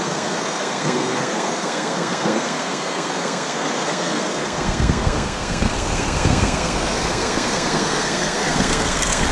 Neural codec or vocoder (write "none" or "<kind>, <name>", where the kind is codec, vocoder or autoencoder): codec, SNAC